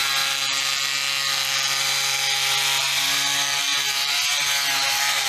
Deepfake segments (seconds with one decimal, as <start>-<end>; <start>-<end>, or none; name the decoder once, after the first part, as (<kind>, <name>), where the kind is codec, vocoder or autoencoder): none